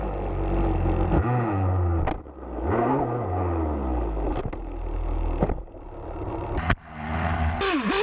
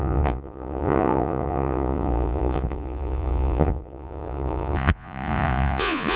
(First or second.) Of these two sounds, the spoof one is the second